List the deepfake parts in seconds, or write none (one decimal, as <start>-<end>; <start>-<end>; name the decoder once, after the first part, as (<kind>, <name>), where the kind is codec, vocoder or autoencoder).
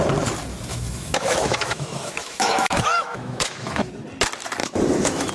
0.7-3.9 (autoencoder, DAC-VAE); 4.6-5.3